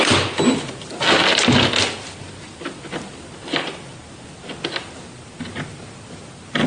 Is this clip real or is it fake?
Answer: real